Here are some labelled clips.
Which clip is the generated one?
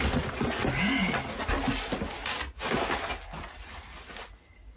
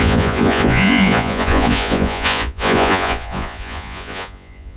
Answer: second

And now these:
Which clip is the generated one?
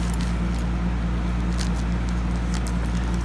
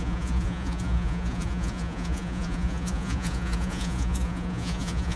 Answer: second